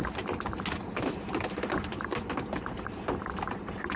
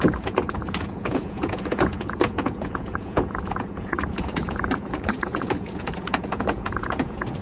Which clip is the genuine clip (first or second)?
first